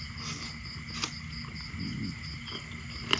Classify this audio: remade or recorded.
recorded